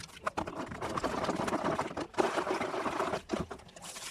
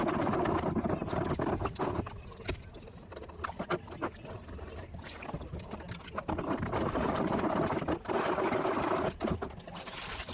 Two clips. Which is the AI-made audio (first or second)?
first